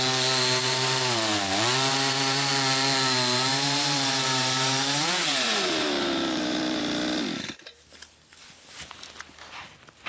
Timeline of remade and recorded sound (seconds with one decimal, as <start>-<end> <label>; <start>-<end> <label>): 0.0-0.6 recorded; 0.6-1.5 remade; 1.5-1.9 recorded; 1.9-2.5 remade; 2.5-3.5 recorded; 3.5-6.8 remade; 6.8-10.1 recorded